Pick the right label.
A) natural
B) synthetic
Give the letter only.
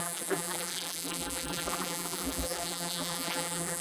B